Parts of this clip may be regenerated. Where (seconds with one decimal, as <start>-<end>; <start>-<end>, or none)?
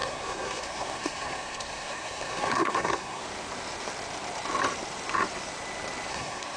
0.0-3.2; 6.1-6.6